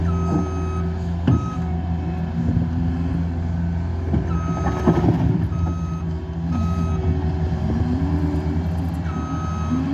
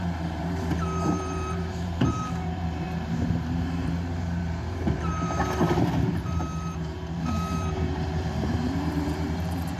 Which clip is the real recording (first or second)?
first